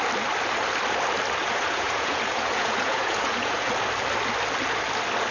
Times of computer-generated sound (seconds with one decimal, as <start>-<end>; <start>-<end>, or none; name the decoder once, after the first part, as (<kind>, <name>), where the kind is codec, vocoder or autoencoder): 1.4-3.7 (vocoder, Vocos)